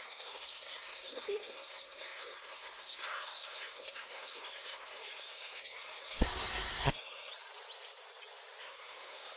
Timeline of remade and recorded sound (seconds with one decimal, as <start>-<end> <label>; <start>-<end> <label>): 0.0-7.3 remade; 7.3-8.6 recorded; 8.6-9.4 remade